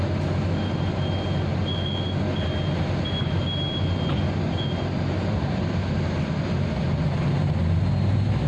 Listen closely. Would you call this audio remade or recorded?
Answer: recorded